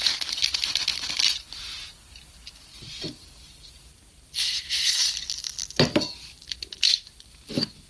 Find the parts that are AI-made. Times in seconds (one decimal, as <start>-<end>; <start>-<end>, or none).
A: none